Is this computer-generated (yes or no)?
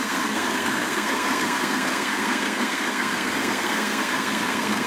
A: yes